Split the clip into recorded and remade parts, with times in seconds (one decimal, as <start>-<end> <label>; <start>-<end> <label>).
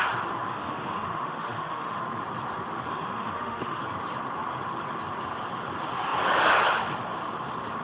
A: 0.0-0.5 recorded; 0.5-2.0 remade; 2.0-2.9 recorded; 2.9-3.8 remade; 3.8-7.8 recorded